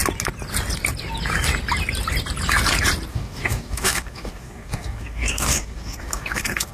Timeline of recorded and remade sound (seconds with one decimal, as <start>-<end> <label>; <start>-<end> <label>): 0.0-3.1 recorded; 3.1-6.7 remade